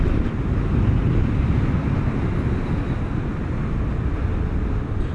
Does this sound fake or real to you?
real